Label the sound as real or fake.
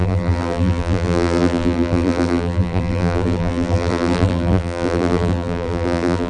fake